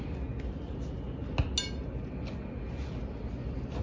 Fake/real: real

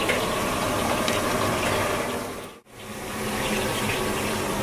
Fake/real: real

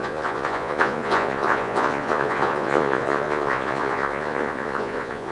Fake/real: fake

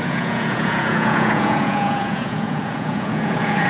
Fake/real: fake